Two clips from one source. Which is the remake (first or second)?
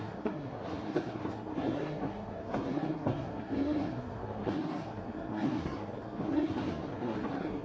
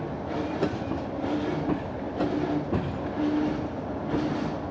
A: first